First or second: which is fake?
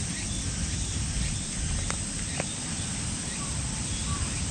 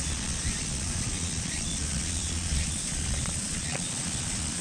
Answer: second